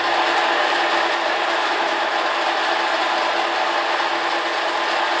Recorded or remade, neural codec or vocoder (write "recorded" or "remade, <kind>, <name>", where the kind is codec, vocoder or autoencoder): recorded